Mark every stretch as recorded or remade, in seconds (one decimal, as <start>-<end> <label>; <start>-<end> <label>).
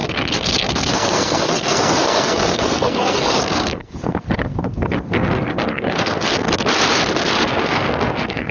0.0-6.3 remade; 6.3-7.6 recorded; 7.6-8.5 remade